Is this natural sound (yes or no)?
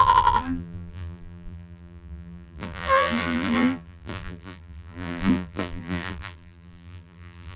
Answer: no